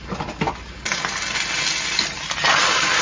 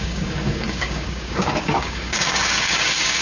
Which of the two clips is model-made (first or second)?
second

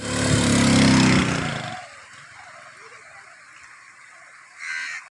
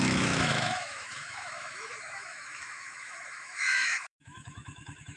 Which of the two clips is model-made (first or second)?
second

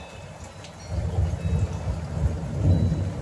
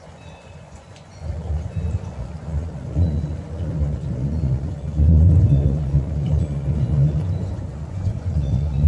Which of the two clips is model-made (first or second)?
second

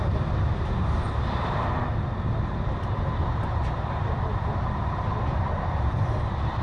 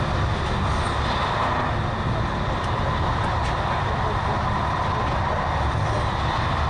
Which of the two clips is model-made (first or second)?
first